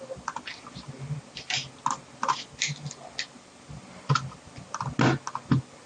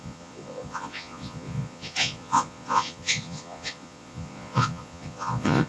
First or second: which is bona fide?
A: first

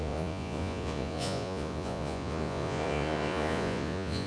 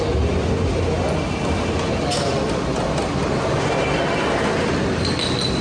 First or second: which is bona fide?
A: second